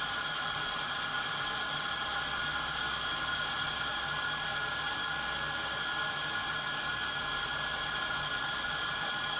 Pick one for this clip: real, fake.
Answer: real